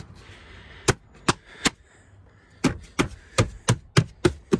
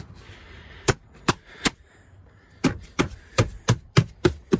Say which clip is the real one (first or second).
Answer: first